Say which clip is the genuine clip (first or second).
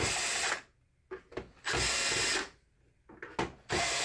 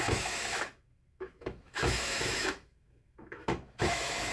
first